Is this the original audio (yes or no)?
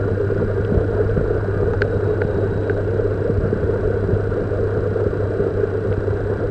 yes